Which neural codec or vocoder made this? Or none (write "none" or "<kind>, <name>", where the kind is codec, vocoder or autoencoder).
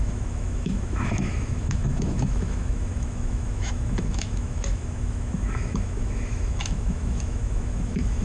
autoencoder, DAC-VAE